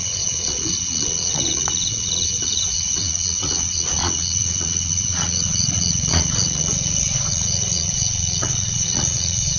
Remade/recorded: remade